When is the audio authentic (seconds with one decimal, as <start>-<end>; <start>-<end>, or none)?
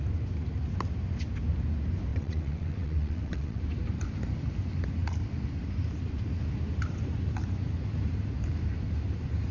0.0-2.1; 3.6-9.5